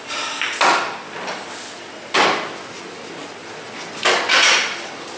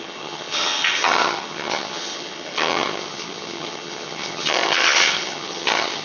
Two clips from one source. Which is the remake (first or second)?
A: second